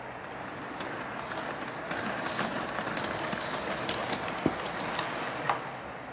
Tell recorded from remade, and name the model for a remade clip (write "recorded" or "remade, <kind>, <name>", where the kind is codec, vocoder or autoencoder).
recorded